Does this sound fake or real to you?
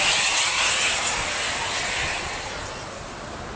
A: real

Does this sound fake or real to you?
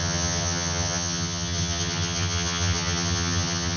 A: fake